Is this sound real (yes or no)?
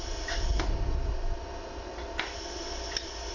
yes